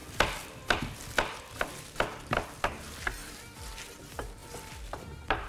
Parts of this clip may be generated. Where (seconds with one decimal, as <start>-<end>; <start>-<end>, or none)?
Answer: 3.2-4.0; 4.4-5.5